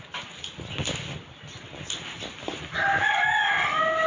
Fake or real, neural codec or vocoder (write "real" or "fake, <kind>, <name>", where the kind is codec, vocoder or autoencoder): real